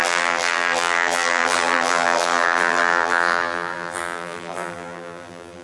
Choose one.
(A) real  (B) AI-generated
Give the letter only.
B